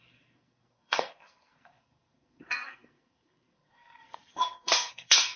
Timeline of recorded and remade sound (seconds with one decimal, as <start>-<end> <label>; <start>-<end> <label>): 0.0-5.4 remade